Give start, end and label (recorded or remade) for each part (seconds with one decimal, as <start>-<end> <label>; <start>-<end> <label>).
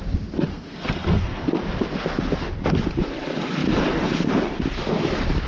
0.0-0.5 recorded; 0.5-1.5 remade; 1.5-5.5 recorded